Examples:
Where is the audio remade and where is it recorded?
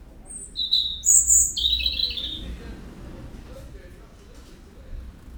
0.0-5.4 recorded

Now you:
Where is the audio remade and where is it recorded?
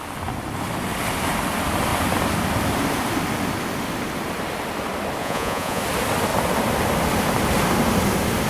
0.0-5.2 recorded; 5.2-5.8 remade; 5.8-8.5 recorded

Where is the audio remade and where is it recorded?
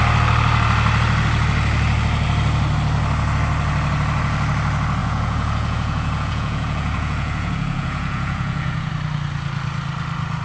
0.0-5.0 recorded; 5.0-8.9 remade; 8.9-10.4 recorded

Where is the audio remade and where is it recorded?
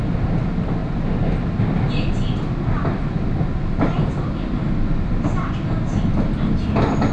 0.0-7.1 recorded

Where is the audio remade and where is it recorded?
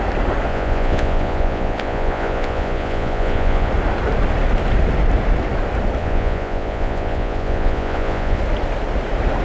0.0-0.5 recorded; 0.5-3.7 remade; 3.7-6.0 recorded; 6.0-8.4 remade; 8.4-9.4 recorded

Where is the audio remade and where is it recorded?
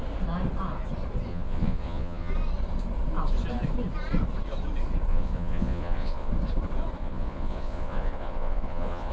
0.0-1.3 recorded; 1.3-2.3 remade; 2.3-5.1 recorded; 5.1-6.3 remade; 6.3-7.0 recorded; 7.0-9.1 remade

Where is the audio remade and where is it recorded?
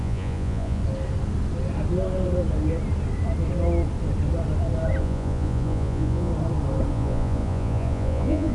0.0-0.8 remade; 0.8-5.0 recorded; 5.0-6.3 remade; 6.3-6.9 recorded; 6.9-8.5 remade